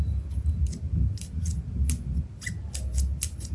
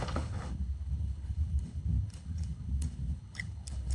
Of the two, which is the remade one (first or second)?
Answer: second